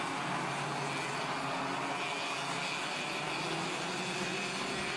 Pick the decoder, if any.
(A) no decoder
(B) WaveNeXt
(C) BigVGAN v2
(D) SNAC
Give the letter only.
A